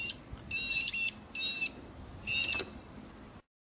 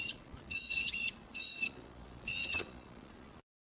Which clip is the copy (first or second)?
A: second